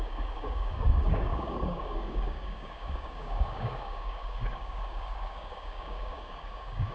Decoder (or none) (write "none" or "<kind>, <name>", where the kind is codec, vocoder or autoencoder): codec, DAC